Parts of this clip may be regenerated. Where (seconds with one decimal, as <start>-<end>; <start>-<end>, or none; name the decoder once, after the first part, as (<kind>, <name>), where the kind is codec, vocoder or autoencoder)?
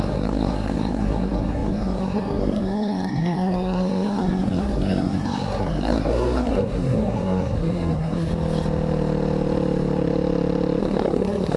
0.0-8.3 (codec, SNAC); 10.8-11.6